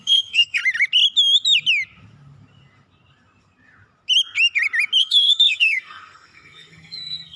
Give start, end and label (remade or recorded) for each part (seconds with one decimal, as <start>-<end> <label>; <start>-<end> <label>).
0.0-0.6 remade; 0.6-5.0 recorded; 5.0-7.4 remade